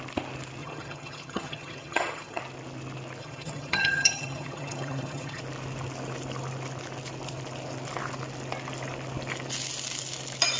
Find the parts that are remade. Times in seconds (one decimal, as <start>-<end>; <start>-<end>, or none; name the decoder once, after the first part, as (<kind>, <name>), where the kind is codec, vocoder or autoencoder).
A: 0.6-2.4 (vocoder, HiFi-GAN); 3.2-5.4